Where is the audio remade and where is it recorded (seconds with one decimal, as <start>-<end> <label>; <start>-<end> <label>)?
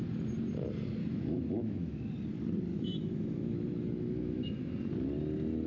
0.0-1.0 recorded; 1.0-2.1 remade; 2.1-2.7 recorded; 2.7-4.7 remade; 4.7-5.7 recorded